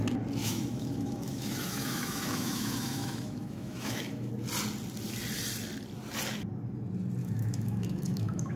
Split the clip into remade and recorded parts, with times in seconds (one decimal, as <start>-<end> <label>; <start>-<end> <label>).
0.0-0.4 recorded; 0.4-4.3 remade; 4.3-7.2 recorded; 7.2-8.6 remade